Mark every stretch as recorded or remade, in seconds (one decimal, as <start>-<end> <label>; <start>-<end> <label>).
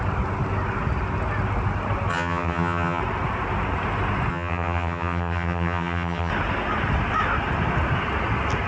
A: 0.0-2.1 recorded; 2.1-3.0 remade; 3.0-4.3 recorded; 4.3-6.3 remade; 6.3-8.7 recorded